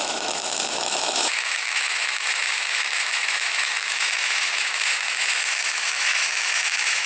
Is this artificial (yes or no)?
yes